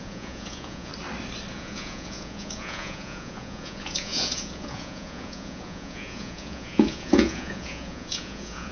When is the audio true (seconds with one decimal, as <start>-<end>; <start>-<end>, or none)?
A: 0.9-1.5